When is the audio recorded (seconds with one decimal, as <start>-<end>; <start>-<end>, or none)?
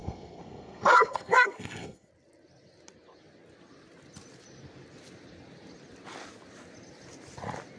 2.1-7.8